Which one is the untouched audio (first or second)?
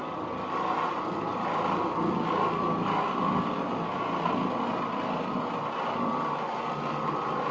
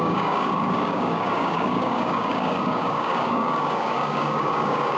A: first